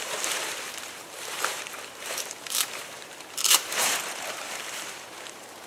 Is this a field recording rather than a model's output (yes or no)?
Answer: no